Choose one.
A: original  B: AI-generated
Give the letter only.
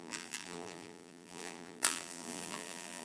B